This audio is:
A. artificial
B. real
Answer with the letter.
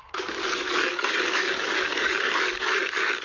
A